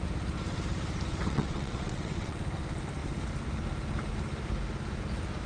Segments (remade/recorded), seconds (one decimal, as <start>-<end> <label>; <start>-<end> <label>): 0.0-1.2 recorded; 1.2-2.4 remade; 2.4-5.5 recorded